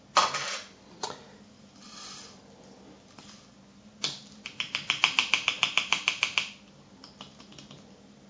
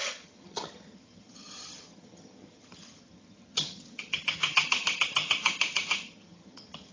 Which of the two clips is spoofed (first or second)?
second